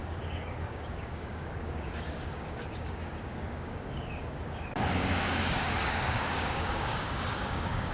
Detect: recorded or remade remade